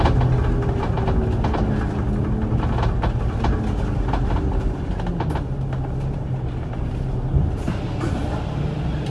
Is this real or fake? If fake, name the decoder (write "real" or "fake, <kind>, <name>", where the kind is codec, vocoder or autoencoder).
real